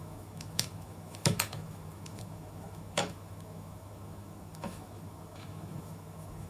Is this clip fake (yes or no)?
yes